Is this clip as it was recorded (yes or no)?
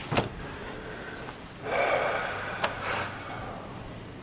yes